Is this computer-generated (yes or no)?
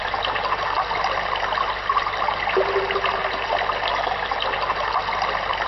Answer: no